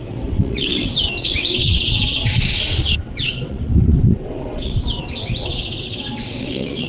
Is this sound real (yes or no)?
no